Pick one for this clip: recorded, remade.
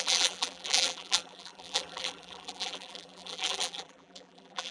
remade